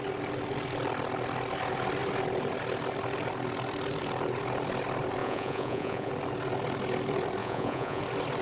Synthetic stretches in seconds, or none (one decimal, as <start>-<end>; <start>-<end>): 5.2-6.1; 7.4-8.0